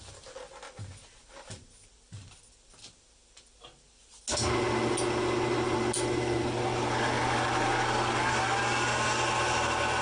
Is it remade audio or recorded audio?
recorded